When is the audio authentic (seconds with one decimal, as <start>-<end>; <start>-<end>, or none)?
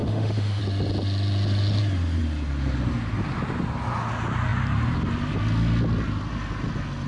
0.6-7.1